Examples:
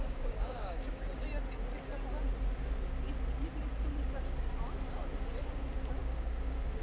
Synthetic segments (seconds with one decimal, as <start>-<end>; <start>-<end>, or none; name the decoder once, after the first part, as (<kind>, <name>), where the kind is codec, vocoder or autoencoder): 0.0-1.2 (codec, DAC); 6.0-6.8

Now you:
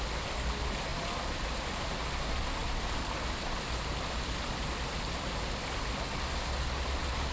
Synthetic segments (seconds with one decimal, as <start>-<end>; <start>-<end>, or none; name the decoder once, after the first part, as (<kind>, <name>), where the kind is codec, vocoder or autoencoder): none

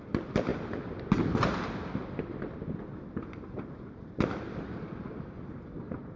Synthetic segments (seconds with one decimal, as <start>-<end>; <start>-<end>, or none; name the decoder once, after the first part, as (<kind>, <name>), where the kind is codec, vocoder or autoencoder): none